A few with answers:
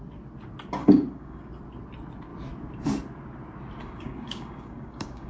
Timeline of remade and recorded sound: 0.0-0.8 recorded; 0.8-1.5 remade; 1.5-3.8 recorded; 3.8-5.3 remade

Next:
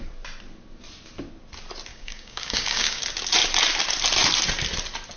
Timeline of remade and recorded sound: 0.0-1.9 recorded; 1.9-3.0 remade; 3.0-5.2 recorded

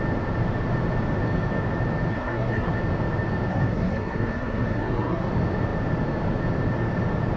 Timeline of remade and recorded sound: 0.0-2.1 recorded; 2.1-2.8 remade; 2.8-3.5 recorded; 3.5-5.3 remade; 5.3-7.4 recorded

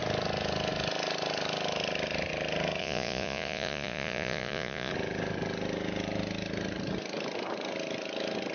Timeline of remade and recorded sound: 0.0-2.8 recorded; 2.8-4.9 remade; 4.9-8.5 recorded

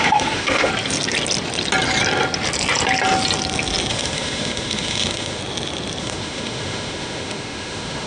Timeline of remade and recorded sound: 0.0-0.7 remade; 0.7-3.9 recorded; 3.9-5.4 remade; 5.4-6.0 recorded; 6.0-8.1 remade

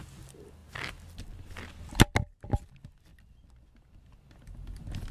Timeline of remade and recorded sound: 0.0-5.1 recorded

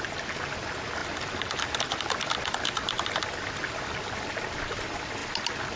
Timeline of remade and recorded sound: 0.0-5.8 recorded

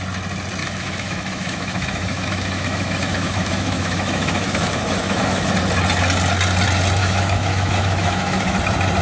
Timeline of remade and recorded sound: 0.0-0.6 recorded; 0.6-5.5 remade; 5.5-7.0 recorded; 7.0-8.6 remade; 8.6-9.0 recorded